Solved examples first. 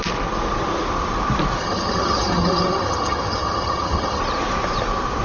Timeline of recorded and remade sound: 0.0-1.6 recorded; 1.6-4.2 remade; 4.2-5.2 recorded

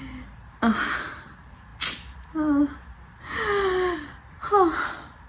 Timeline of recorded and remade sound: 0.0-5.3 recorded

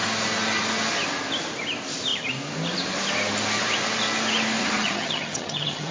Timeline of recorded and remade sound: 0.0-4.6 recorded; 4.6-5.9 remade

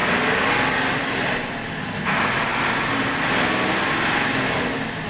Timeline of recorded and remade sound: 0.0-5.1 recorded

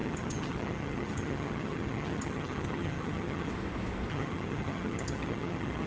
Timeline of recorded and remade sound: 0.0-3.5 remade; 3.5-4.1 recorded; 4.1-5.9 remade

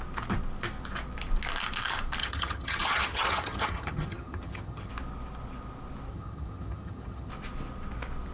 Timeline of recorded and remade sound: 0.0-2.2 recorded; 2.2-4.9 remade; 4.9-6.1 recorded; 6.1-7.3 remade; 7.3-8.3 recorded

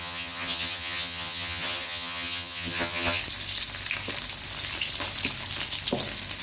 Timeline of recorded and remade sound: 0.0-3.2 remade; 3.2-6.4 recorded